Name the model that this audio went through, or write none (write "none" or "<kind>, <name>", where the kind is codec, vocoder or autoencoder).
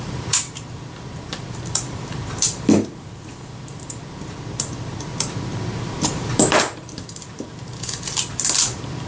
vocoder, BigVGAN v2